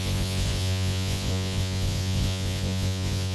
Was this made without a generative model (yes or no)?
no